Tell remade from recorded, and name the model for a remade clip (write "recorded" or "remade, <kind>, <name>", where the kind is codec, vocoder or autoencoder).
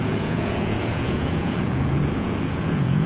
remade, vocoder, Vocos